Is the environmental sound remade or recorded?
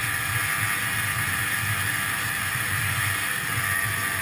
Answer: recorded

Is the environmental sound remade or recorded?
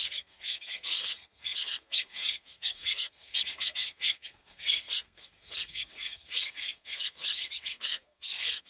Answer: remade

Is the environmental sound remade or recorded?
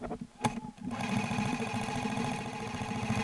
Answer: recorded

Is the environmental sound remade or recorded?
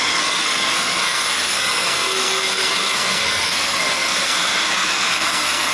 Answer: remade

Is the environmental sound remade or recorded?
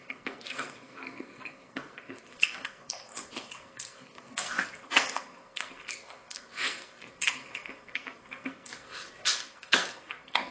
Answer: remade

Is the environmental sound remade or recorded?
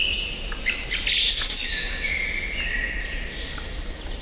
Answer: recorded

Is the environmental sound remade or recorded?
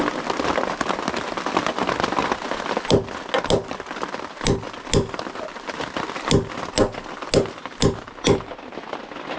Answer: recorded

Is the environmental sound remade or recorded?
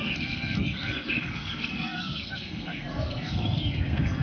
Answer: remade